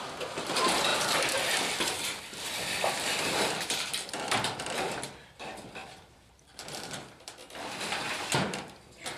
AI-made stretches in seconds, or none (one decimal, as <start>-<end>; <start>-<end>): 0.0-0.9; 2.2-9.2

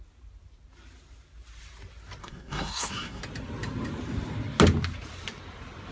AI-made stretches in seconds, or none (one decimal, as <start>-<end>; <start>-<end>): 2.2-3.2

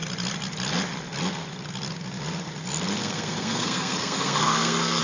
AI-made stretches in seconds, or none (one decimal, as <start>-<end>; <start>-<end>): 3.0-5.0

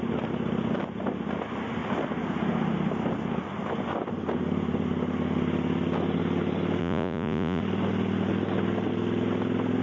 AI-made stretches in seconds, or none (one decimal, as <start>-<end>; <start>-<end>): 6.8-7.6

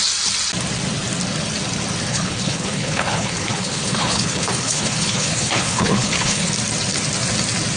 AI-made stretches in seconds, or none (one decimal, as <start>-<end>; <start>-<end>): 2.1-6.5

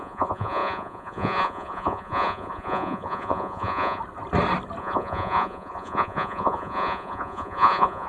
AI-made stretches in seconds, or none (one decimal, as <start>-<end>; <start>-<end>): 0.0-4.0; 4.8-8.1

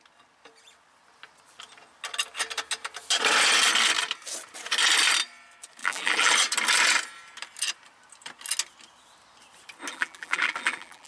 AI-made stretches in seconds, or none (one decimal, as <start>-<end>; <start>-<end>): 5.8-6.3; 9.9-11.1

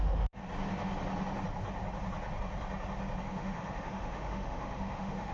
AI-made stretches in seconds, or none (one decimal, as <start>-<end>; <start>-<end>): 0.0-0.4; 3.2-5.3